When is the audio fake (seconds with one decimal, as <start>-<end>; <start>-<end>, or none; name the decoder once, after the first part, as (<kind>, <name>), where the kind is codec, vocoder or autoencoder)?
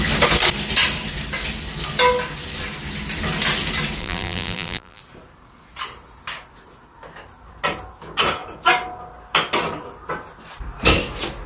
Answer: 4.0-5.0 (vocoder, BigVGAN v2)